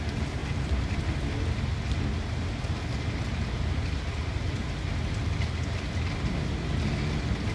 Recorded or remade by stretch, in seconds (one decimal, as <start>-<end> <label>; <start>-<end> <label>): 0.0-7.5 recorded